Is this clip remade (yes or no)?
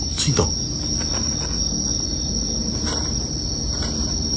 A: no